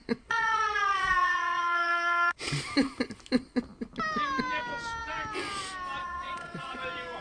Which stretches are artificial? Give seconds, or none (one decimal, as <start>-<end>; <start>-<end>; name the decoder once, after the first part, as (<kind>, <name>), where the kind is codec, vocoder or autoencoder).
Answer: 0.0-2.5 (vocoder, Vocos); 6.0-6.8